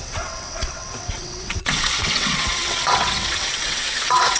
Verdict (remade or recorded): remade